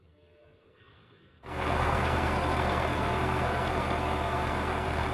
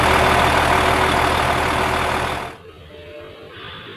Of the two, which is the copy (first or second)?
first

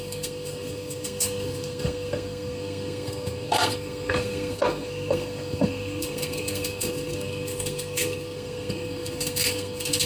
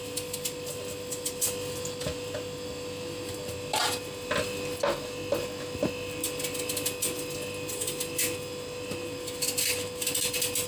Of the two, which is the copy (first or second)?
first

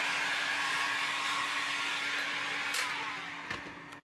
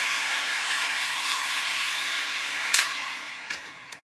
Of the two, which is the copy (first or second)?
second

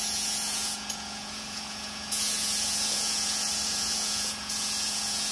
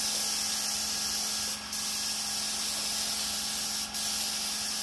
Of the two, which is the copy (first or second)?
first